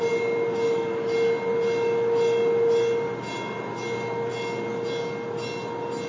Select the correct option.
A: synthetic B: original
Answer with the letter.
B